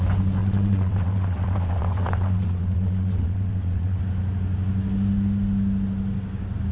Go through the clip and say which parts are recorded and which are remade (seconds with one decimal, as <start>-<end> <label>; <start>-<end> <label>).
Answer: 0.0-0.4 recorded; 0.4-4.0 remade; 4.0-6.7 recorded